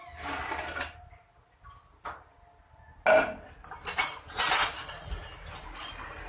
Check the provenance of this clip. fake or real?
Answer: real